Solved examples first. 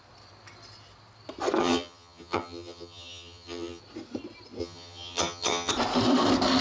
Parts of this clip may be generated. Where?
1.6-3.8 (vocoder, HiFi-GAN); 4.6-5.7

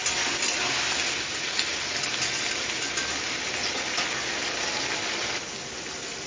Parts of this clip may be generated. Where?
none

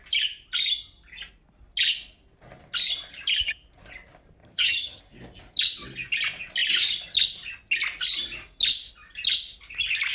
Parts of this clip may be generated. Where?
4.4-5.0 (vocoder, HiFi-GAN)

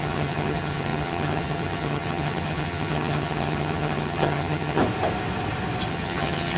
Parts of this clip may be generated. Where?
0.0-4.8 (vocoder, HiFi-GAN); 5.9-6.6